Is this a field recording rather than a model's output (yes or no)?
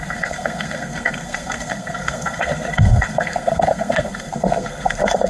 no